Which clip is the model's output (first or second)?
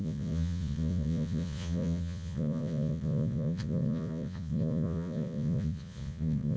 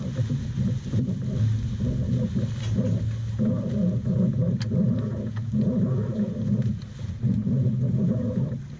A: first